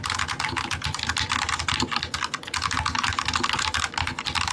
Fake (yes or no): no